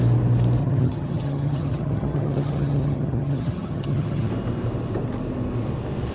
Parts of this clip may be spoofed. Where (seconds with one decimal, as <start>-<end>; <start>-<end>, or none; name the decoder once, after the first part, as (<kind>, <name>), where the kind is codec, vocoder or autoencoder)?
0.6-4.3 (vocoder, HiFi-GAN)